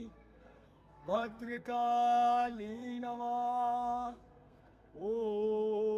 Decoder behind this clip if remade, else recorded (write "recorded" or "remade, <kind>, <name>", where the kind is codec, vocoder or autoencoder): remade, codec, SNAC